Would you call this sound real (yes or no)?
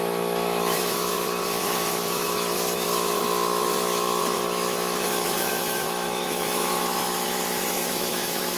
no